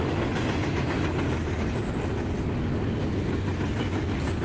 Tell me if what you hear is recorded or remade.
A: recorded